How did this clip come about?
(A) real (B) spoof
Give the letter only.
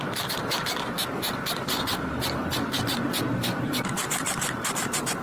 B